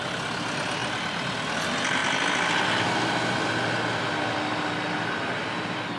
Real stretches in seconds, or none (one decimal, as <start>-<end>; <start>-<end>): 0.0-6.0